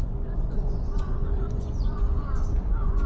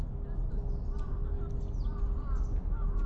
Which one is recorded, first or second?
second